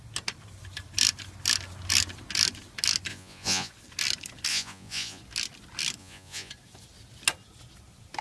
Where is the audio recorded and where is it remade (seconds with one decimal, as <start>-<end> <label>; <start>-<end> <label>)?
0.0-3.1 recorded; 3.1-3.7 remade; 3.7-4.5 recorded; 4.5-5.2 remade; 5.2-6.0 recorded; 6.0-6.5 remade; 6.5-8.2 recorded